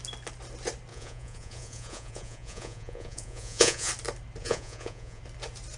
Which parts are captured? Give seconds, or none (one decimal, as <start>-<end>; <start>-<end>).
0.0-0.9; 3.9-4.4; 5.2-5.8